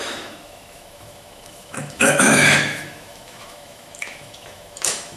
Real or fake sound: fake